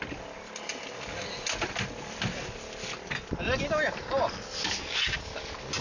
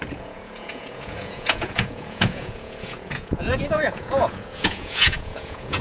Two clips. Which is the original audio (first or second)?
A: first